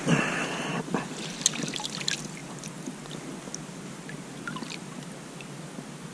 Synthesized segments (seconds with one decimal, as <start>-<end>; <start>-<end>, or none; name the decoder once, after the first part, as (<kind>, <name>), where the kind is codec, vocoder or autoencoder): none